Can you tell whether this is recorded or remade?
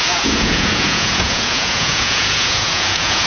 remade